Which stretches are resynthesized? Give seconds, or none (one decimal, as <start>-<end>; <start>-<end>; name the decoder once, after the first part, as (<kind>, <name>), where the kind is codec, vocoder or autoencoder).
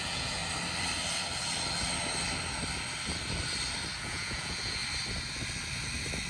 0.0-0.4 (vocoder, Vocos); 4.0-4.8